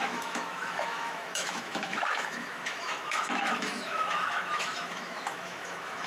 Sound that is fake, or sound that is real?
fake